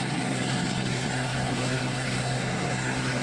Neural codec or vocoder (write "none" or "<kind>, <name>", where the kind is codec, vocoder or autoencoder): codec, SNAC